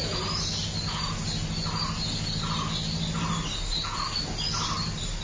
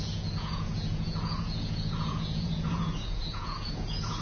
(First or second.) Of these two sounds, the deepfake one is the second